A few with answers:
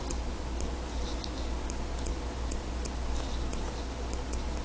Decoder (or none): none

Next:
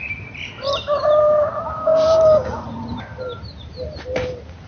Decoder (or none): vocoder, BigVGAN v2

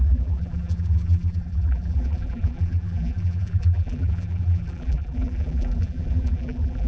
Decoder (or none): vocoder, BigVGAN v2